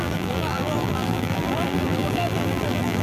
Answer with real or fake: fake